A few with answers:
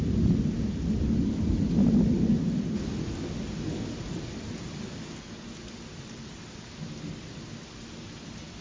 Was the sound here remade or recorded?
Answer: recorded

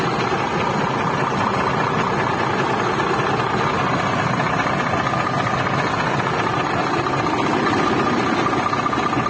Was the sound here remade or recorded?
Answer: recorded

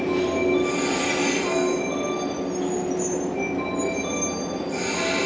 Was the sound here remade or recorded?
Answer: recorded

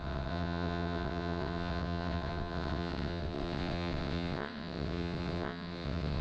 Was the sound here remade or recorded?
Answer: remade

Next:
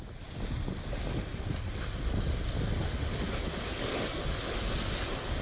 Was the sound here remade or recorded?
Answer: recorded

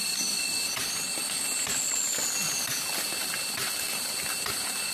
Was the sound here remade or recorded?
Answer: recorded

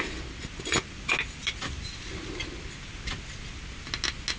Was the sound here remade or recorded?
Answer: recorded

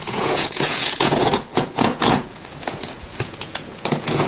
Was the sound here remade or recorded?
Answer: remade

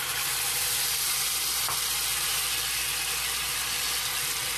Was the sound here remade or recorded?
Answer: recorded